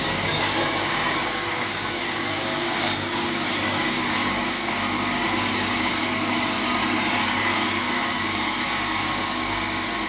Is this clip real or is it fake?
fake